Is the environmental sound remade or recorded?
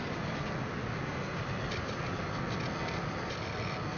recorded